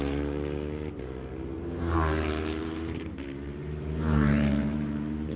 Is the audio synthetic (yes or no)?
yes